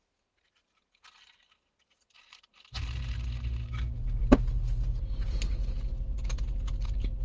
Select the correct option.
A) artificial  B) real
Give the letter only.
B